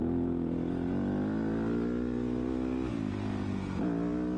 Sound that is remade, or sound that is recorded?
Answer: recorded